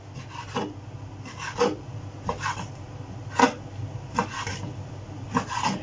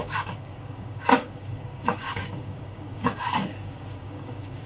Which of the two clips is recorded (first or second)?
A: first